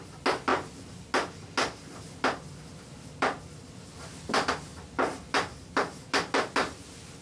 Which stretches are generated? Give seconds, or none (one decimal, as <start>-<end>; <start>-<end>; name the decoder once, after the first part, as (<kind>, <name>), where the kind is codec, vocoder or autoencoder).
none